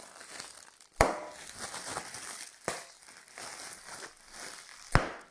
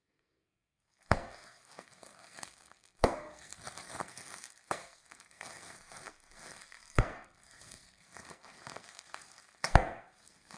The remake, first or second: second